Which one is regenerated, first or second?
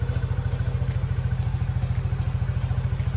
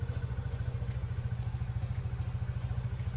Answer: second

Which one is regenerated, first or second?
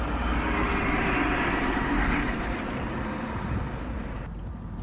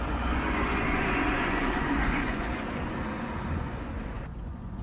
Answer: second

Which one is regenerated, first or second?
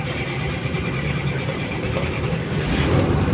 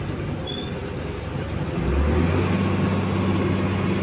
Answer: first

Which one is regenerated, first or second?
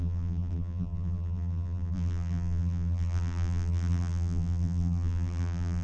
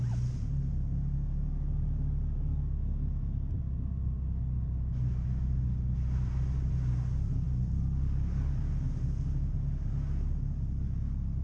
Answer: first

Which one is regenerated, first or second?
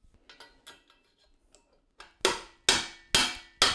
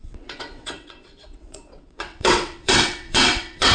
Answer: second